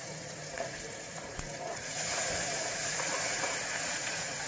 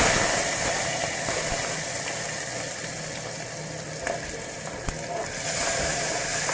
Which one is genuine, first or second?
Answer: second